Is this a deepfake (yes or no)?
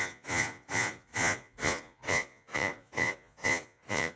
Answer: yes